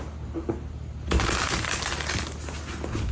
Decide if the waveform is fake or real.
real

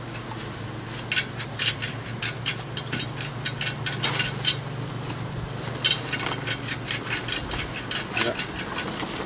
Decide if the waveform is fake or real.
real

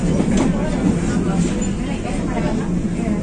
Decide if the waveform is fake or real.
real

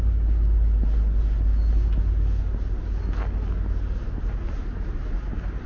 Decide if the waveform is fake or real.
real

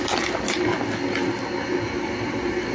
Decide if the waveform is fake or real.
real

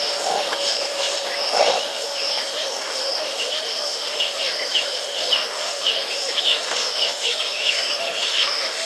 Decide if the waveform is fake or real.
fake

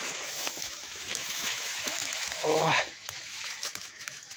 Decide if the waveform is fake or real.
fake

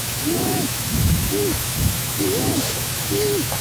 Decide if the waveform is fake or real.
fake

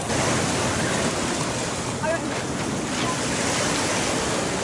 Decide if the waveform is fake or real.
real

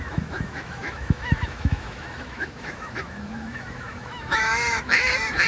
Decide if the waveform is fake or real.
fake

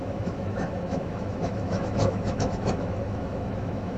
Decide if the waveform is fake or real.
fake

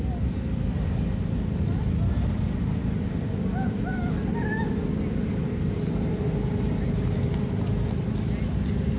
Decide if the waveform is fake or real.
real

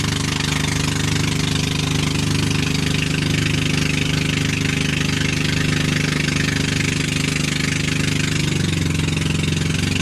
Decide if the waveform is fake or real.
real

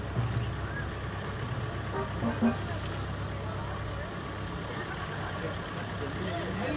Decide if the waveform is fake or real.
real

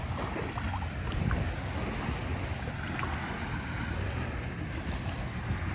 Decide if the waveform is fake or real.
real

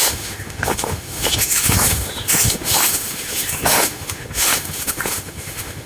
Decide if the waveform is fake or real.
fake